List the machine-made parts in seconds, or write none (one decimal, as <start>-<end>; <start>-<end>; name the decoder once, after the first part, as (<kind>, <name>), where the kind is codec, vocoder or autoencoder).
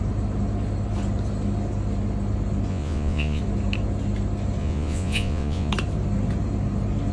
2.7-3.4 (vocoder, Vocos); 4.6-5.7